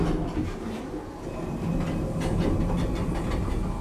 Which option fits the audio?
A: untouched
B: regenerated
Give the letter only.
A